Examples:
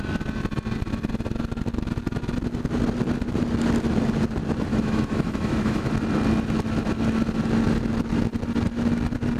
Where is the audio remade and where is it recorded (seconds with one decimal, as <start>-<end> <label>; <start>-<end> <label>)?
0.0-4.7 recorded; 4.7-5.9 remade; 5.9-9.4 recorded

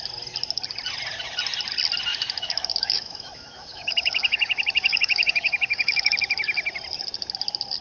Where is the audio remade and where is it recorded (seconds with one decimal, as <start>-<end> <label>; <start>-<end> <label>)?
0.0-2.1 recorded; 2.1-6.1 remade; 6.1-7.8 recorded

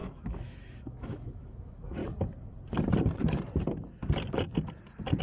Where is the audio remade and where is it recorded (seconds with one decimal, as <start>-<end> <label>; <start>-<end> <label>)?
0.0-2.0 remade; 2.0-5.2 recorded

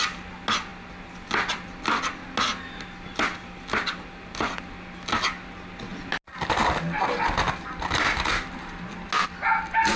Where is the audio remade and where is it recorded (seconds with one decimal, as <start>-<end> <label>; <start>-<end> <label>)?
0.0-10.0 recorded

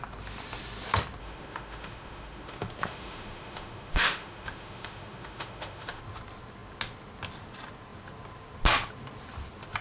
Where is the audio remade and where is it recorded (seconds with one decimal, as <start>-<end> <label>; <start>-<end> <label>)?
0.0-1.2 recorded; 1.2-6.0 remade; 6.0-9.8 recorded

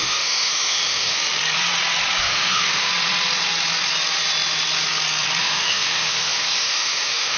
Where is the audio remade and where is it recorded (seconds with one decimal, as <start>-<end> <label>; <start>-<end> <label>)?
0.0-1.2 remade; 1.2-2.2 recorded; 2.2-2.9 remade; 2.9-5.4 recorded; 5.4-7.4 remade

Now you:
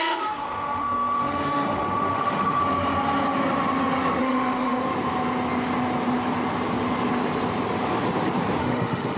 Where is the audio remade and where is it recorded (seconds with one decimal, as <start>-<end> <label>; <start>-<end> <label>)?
0.0-2.6 remade; 2.6-4.2 recorded; 4.2-4.8 remade; 4.8-8.6 recorded; 8.6-9.2 remade

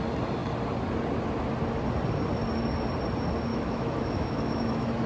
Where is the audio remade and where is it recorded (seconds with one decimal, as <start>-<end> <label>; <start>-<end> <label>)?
0.0-3.5 recorded; 3.5-5.1 remade